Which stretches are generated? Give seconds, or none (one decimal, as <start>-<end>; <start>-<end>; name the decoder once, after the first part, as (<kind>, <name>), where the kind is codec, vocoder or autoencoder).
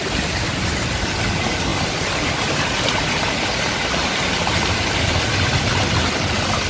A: none